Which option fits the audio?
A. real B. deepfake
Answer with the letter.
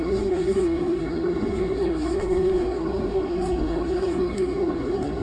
B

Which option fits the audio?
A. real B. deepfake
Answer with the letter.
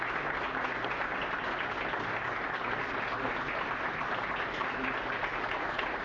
A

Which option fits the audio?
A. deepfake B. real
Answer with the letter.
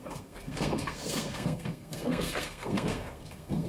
A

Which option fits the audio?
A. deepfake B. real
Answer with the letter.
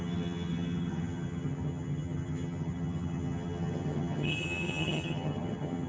A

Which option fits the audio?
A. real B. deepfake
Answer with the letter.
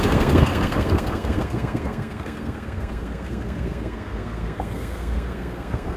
B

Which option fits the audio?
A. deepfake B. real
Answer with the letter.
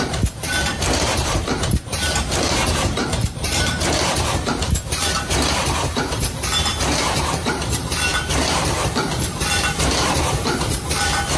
A